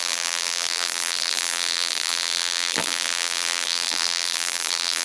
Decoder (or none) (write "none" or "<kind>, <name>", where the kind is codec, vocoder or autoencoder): vocoder, BigVGAN v2